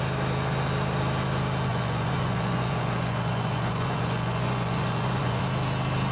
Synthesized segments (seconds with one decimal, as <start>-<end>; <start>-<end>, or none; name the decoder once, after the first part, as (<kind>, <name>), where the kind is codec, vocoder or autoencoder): 1.7-5.4 (vocoder, Vocos)

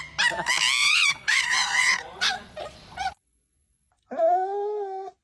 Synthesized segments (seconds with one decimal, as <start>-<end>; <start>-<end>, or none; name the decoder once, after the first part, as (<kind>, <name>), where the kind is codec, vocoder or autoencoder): 0.8-3.9 (vocoder, Vocos)

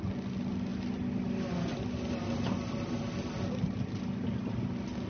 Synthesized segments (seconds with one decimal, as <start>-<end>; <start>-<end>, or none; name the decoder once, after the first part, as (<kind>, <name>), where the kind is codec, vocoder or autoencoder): none

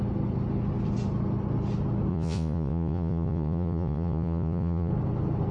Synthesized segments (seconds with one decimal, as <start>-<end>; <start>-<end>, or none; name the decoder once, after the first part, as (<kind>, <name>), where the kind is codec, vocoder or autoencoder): 2.1-4.9 (vocoder, Vocos)

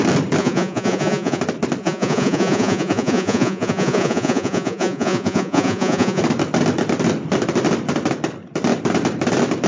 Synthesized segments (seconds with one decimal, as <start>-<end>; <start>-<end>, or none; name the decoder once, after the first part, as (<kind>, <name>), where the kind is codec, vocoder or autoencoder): 0.4-1.4 (vocoder, Vocos); 1.8-6.2

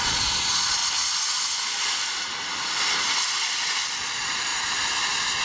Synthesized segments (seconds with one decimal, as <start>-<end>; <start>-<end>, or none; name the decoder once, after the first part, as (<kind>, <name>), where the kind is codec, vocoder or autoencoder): 0.0-0.8 (vocoder, Vocos); 4.0-4.5

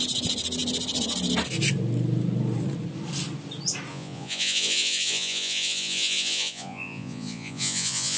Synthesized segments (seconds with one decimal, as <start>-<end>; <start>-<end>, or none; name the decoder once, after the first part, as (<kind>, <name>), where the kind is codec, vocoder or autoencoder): 3.9-8.2 (vocoder, Vocos)